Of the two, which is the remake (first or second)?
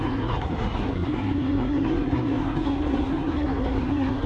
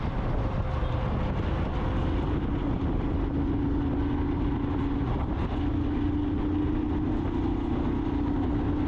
first